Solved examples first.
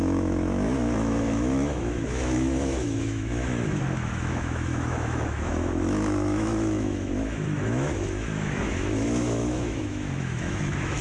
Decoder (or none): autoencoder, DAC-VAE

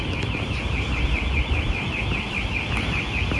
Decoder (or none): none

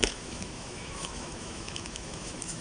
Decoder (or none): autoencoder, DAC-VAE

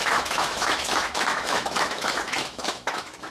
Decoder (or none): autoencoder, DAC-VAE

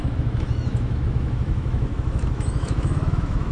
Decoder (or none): autoencoder, DAC-VAE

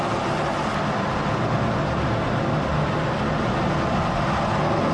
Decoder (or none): none